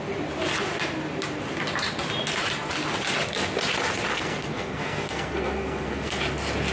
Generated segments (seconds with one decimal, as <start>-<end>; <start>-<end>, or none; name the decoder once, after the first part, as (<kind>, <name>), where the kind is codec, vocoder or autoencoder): 4.1-6.2 (codec, SNAC)